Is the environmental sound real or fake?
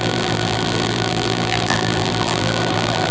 fake